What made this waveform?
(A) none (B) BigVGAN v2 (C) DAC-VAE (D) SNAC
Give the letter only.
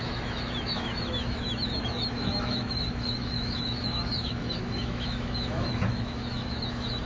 C